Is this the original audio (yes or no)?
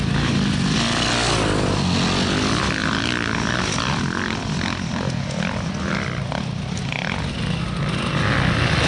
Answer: yes